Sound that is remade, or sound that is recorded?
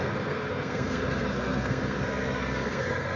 remade